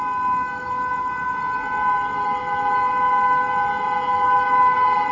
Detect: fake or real real